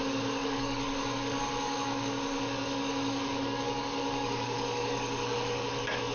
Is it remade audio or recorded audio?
remade